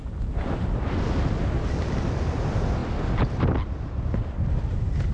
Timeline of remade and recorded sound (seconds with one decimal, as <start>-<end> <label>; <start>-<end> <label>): 0.0-5.1 recorded